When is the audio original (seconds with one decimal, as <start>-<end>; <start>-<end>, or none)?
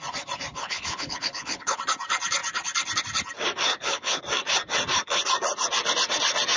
0.0-0.5; 1.8-3.7; 4.2-6.6